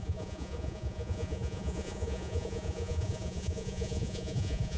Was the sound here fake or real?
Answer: fake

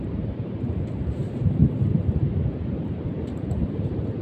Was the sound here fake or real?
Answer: fake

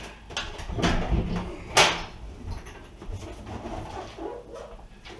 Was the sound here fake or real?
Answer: real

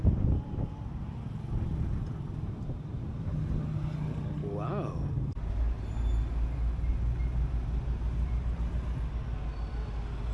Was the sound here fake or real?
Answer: real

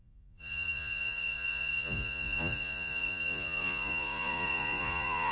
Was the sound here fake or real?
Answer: fake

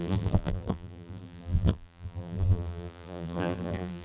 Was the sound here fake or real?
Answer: fake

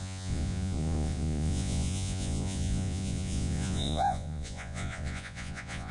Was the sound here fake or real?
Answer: fake